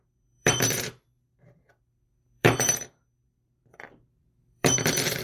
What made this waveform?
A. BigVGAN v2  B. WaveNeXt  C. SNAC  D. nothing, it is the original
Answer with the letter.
A